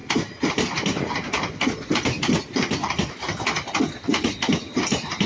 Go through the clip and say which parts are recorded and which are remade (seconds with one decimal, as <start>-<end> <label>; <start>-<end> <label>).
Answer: 0.0-5.3 recorded